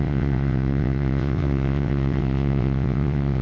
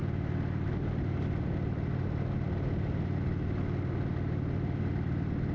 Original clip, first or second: second